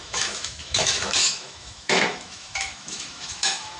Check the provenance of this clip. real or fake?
fake